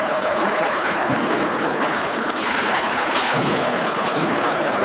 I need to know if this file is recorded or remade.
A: remade